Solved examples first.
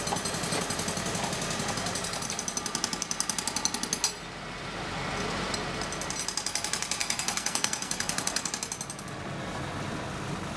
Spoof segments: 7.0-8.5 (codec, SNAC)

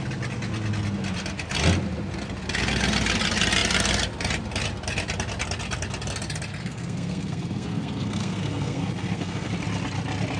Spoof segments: 6.6-9.5 (codec, SNAC)